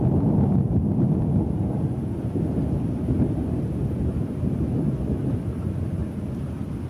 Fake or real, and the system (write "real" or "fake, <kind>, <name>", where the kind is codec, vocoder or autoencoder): fake, vocoder, BigVGAN v2